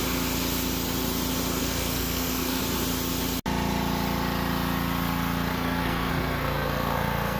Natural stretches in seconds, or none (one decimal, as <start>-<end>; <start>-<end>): 0.0-1.6; 2.6-5.5